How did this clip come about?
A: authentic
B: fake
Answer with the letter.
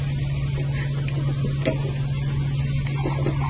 A